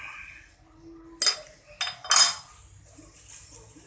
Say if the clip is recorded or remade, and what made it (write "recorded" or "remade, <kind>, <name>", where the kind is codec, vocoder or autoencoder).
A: recorded